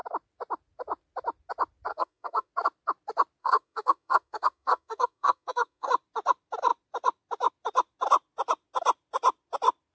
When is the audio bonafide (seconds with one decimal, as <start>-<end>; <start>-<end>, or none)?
0.0-1.9; 2.5-3.4; 5.9-9.9